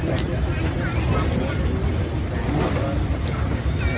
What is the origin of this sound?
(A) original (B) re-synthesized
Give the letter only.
A